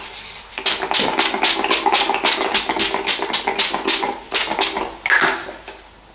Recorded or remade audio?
recorded